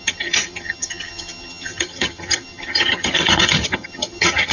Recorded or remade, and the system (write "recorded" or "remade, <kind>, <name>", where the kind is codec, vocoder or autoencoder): remade, vocoder, HiFi-GAN